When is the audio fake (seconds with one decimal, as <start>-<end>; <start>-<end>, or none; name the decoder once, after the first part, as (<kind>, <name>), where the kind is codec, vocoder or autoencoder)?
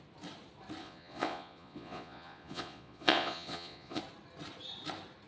0.8-4.0 (vocoder, Vocos)